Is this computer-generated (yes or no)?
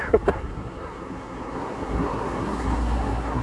yes